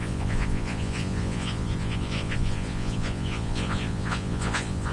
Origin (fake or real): fake